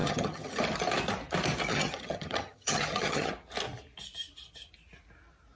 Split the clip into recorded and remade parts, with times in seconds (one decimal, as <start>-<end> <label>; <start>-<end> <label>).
0.0-0.6 remade; 0.6-1.7 recorded; 1.7-3.3 remade; 3.3-5.6 recorded